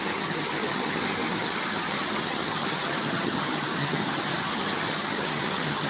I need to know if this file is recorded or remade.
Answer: remade